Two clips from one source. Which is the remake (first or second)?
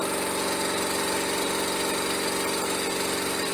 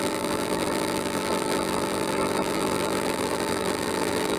second